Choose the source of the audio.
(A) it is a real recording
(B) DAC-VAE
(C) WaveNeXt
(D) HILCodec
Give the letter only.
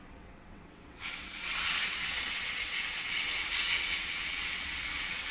C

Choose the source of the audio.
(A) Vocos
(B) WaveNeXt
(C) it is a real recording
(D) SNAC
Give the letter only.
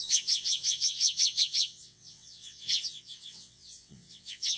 B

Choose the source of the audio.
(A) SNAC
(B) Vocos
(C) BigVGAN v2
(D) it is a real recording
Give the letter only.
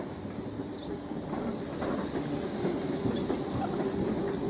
D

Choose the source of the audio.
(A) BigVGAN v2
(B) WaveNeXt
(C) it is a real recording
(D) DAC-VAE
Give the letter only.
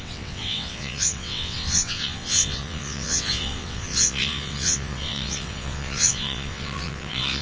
B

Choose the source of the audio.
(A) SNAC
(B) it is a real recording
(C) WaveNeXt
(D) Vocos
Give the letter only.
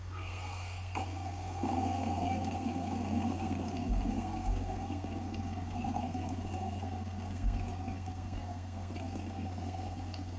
A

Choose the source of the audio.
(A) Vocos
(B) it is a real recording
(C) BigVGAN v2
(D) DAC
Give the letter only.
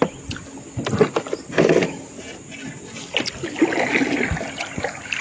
B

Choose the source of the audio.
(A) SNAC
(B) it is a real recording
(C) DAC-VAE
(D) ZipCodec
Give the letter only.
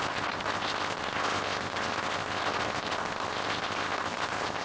D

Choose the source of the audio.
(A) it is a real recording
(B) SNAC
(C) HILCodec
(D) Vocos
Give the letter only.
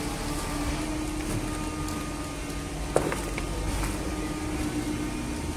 A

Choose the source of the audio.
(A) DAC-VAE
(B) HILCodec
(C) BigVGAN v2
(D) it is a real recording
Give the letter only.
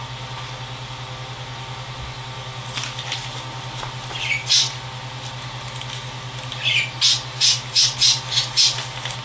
D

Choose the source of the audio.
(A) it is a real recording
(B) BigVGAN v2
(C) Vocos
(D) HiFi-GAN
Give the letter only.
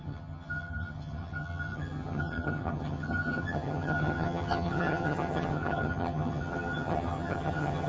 D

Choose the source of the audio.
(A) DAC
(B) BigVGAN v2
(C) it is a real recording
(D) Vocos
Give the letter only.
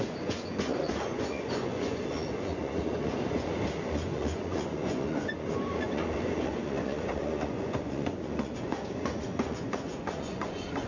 D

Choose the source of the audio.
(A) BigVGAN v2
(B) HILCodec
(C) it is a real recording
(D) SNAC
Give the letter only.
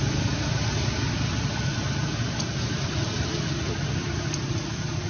C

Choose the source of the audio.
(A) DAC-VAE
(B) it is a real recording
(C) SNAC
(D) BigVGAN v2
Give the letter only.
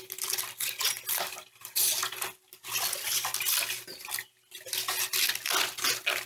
B